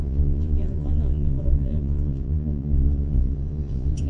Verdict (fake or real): fake